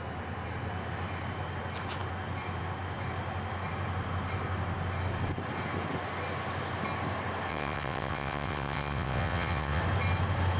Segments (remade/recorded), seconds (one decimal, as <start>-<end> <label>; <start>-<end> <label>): 0.0-7.5 recorded; 7.5-9.8 remade; 9.8-10.6 recorded